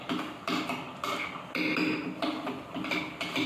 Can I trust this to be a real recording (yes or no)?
yes